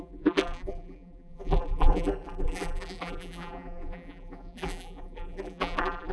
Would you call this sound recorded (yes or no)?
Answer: no